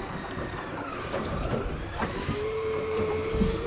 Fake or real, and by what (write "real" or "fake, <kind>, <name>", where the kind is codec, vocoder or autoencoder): fake, vocoder, BigVGAN v2